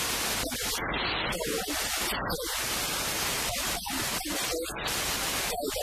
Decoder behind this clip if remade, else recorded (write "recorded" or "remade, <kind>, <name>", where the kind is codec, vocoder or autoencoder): recorded